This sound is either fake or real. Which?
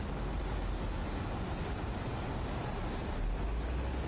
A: real